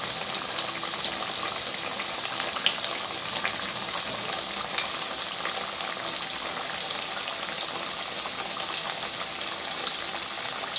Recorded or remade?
recorded